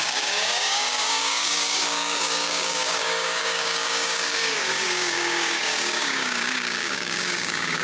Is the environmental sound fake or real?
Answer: fake